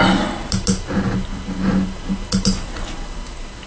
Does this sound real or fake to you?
real